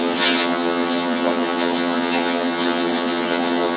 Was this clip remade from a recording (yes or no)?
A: yes